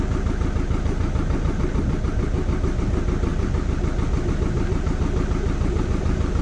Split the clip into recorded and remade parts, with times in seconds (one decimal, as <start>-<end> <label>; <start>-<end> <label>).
0.0-6.4 recorded